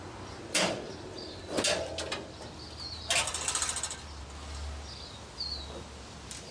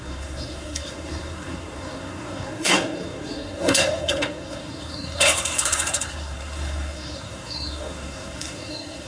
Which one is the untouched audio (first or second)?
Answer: first